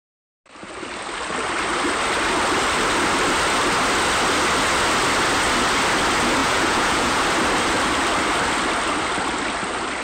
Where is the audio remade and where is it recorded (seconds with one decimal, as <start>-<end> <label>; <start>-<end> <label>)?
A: 0.0-6.4 recorded; 6.4-7.2 remade; 7.2-10.0 recorded